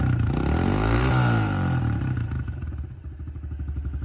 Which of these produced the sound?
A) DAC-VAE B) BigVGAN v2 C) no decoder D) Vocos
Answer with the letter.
C